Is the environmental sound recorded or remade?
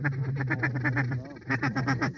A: remade